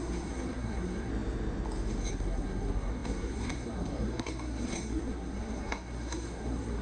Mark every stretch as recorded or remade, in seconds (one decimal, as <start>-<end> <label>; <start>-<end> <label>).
0.0-1.1 remade; 1.1-2.1 recorded; 2.1-6.8 remade